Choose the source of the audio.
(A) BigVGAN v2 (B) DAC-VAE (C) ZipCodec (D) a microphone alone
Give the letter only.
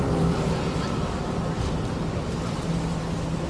A